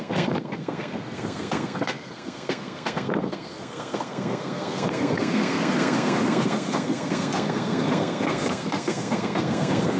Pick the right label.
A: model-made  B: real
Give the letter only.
A